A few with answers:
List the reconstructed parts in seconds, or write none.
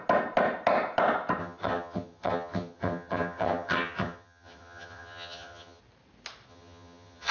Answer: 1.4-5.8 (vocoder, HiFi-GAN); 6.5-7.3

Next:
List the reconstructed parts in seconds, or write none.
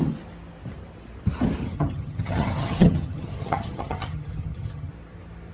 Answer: 1.6-4.9 (vocoder, HiFi-GAN)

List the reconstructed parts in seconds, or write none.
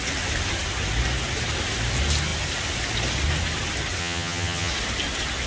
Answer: 4.0-4.7 (vocoder, HiFi-GAN)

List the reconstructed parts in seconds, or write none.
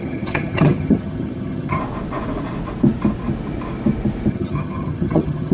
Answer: 0.0-1.8 (vocoder, HiFi-GAN); 4.3-5.5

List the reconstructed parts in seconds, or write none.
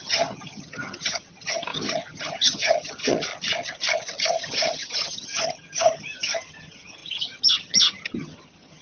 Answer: 0.0-3.3 (vocoder, HiFi-GAN); 4.4-8.8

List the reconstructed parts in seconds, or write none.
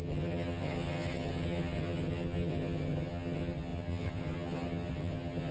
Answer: 0.0-5.5 (vocoder, HiFi-GAN)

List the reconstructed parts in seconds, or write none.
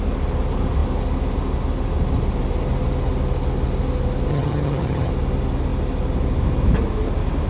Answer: 4.3-5.1 (vocoder, HiFi-GAN)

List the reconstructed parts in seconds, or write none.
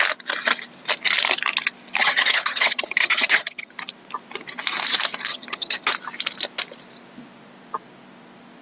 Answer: 2.0-3.7 (vocoder, HiFi-GAN); 5.3-5.9